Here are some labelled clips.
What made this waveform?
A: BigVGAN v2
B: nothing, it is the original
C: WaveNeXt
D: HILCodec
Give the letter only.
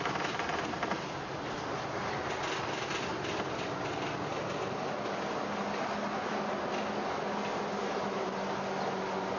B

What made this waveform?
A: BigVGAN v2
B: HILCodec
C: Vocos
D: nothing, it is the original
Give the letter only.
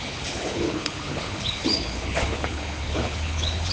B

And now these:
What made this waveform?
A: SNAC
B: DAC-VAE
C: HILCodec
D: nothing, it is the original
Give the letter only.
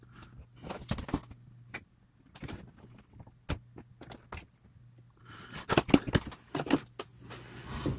D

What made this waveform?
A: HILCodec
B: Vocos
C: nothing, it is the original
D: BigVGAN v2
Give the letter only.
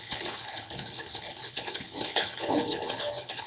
A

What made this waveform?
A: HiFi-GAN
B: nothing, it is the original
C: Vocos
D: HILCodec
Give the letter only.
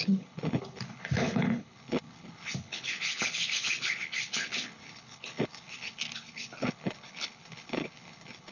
D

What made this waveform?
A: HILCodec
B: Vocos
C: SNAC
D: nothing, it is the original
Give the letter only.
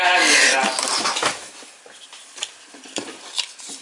D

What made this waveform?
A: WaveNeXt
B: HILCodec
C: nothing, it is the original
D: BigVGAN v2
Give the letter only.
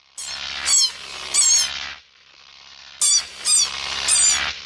C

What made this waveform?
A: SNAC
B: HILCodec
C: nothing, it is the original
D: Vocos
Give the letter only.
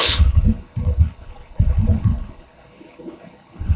B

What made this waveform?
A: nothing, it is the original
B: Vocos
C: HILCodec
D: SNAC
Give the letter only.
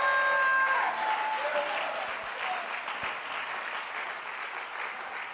A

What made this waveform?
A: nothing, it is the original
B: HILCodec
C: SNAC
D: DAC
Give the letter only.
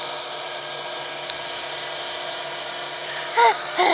A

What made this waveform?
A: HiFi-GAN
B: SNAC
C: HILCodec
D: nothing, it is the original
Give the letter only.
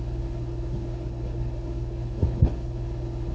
C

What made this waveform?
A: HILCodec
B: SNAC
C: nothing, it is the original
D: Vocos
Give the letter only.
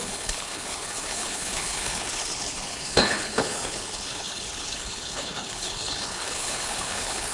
A